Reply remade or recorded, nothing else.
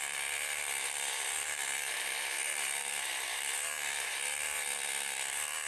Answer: remade